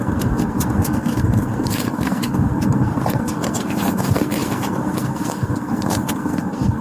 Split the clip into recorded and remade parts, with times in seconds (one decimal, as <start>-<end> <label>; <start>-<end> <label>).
0.0-6.8 remade